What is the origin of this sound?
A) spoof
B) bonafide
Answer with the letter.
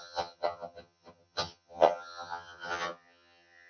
A